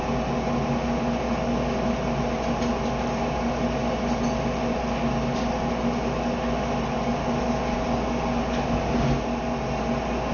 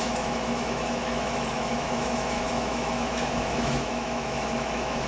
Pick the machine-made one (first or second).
second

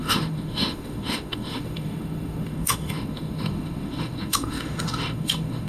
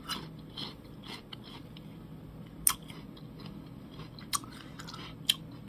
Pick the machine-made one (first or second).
first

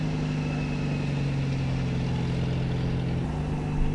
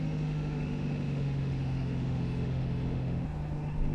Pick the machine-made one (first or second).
second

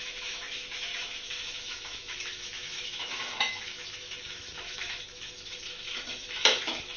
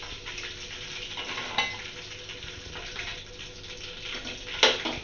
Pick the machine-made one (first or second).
first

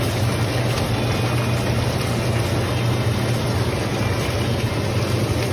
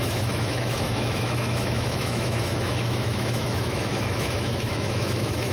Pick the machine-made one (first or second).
second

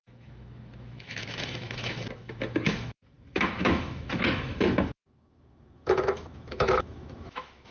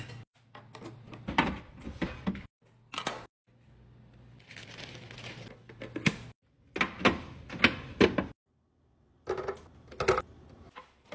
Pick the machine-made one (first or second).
first